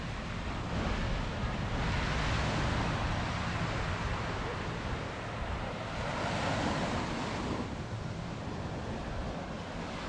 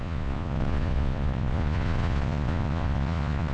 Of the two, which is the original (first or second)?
first